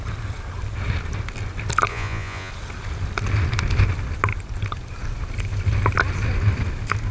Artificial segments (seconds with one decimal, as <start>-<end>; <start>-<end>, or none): 1.9-2.5